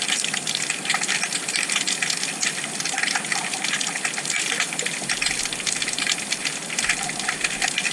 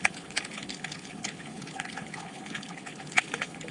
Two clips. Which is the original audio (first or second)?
first